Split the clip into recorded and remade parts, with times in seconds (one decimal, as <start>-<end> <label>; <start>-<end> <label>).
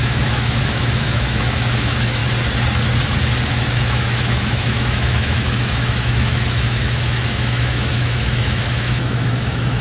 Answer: 0.0-2.2 remade; 2.2-3.5 recorded; 3.5-9.8 remade